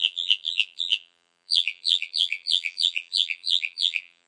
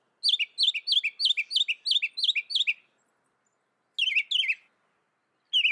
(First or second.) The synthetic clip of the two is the first